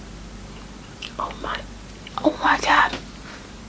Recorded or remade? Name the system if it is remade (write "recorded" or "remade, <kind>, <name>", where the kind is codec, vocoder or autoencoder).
recorded